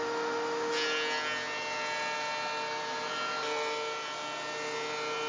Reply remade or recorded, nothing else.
recorded